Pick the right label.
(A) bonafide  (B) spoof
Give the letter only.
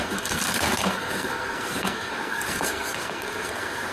B